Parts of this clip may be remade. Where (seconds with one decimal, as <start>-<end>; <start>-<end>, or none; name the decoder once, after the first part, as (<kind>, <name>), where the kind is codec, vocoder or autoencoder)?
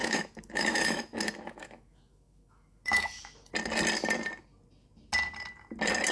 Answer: 0.0-3.5 (autoencoder, DAC-VAE)